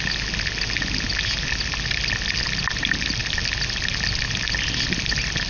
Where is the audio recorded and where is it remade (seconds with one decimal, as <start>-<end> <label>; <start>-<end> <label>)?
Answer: 0.0-5.5 recorded